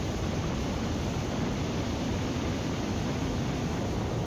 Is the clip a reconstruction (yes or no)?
no